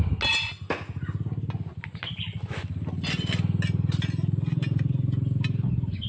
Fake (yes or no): no